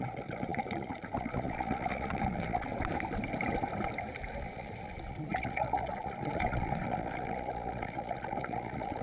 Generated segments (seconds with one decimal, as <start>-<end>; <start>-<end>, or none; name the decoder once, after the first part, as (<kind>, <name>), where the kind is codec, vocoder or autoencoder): 0.0-2.7 (vocoder, Vocos); 4.4-9.0